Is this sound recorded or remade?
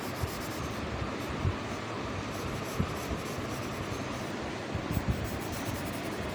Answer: remade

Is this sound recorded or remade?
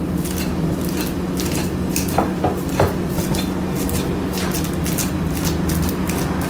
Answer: recorded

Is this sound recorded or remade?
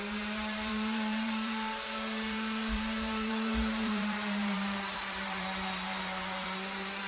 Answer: remade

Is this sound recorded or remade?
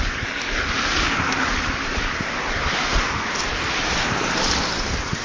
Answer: remade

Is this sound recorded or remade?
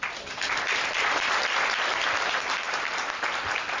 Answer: remade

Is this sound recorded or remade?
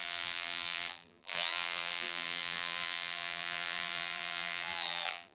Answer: remade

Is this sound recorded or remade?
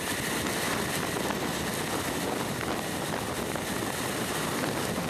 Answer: recorded